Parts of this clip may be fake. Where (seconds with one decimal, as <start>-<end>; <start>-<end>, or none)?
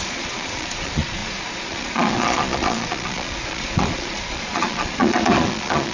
0.0-5.9